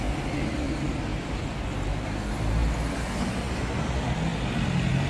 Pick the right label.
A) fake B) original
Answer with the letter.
B